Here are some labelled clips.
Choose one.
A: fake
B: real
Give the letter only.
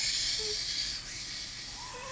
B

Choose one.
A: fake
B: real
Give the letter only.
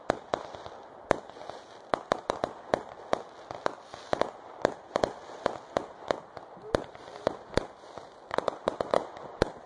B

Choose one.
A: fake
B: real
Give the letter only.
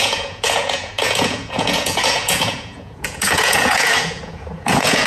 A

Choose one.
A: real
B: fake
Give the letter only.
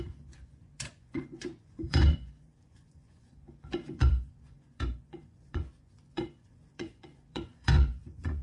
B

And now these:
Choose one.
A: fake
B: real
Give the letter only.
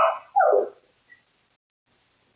B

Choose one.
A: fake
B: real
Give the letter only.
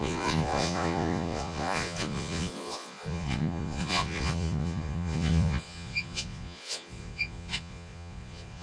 A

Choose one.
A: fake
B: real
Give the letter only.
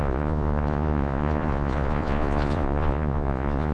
A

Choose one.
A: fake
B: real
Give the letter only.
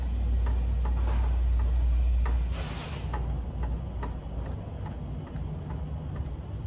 B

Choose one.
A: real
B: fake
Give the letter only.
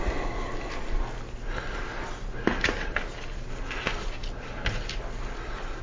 A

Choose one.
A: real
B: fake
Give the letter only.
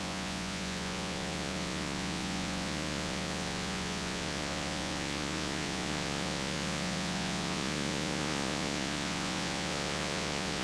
B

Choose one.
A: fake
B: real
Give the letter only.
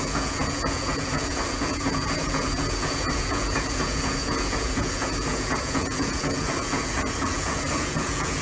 A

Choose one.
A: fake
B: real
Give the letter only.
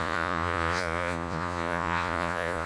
A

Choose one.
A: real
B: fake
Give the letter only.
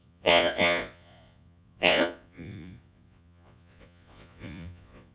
B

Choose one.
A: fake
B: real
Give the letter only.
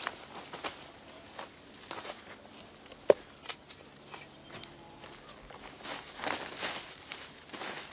B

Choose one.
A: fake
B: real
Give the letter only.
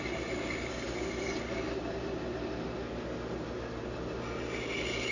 B